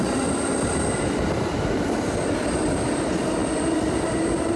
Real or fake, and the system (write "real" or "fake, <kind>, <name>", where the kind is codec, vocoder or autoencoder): real